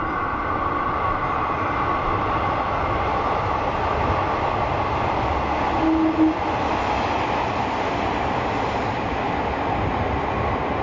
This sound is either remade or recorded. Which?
recorded